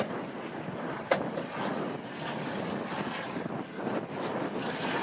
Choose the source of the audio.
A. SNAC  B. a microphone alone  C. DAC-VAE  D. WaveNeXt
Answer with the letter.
B